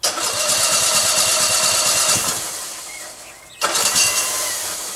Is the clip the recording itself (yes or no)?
yes